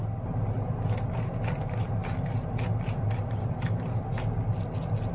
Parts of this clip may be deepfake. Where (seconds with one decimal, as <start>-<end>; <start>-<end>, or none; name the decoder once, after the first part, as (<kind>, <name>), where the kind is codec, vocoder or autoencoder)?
none